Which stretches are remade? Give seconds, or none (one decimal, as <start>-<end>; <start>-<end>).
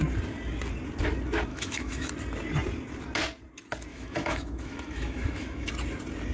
1.5-2.1; 3.9-5.7